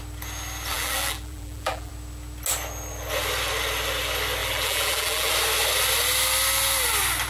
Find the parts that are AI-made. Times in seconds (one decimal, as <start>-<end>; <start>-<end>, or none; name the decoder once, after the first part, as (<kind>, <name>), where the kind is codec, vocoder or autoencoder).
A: 0.7-1.9 (vocoder, BigVGAN v2); 4.4-5.3